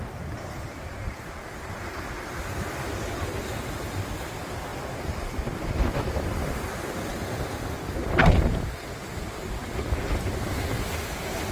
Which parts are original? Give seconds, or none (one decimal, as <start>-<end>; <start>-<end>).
7.1-9.2; 9.6-10.3